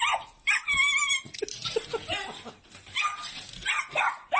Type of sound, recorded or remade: recorded